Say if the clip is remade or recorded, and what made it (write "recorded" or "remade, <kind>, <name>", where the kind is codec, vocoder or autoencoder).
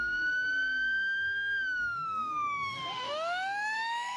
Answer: remade, autoencoder, DAC-VAE